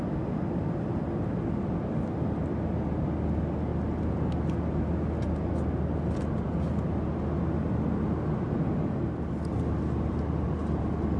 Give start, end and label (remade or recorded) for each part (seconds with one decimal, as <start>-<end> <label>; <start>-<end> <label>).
0.0-11.2 recorded